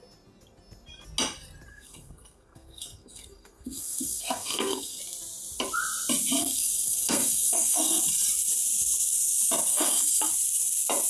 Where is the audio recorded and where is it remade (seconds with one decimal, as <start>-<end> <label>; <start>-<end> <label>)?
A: 0.0-1.7 recorded; 1.7-5.0 remade; 5.0-6.4 recorded; 6.4-8.0 remade; 8.0-9.7 recorded; 9.7-10.3 remade; 10.3-11.1 recorded